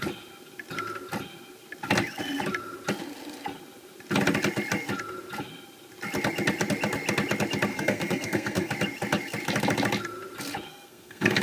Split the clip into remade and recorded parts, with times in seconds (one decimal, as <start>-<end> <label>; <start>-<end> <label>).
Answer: 0.0-7.7 recorded; 7.7-8.7 remade; 8.7-10.7 recorded; 10.7-11.4 remade